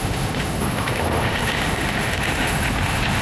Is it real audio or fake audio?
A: fake